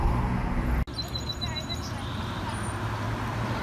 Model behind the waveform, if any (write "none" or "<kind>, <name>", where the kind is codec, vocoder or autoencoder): none